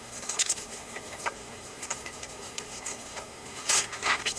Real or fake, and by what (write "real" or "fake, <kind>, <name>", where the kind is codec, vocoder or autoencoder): fake, codec, SNAC